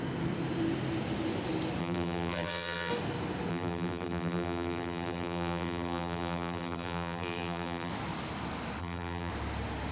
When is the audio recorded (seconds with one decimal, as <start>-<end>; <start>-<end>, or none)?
0.0-1.8; 2.9-3.5; 7.9-8.8; 9.3-9.9